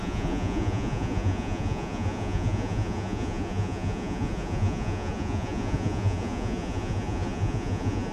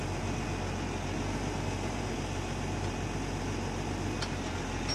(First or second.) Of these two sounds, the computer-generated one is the first